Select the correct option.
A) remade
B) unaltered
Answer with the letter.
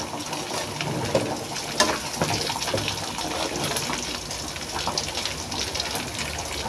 B